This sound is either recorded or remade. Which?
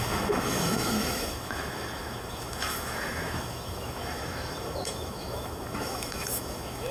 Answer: remade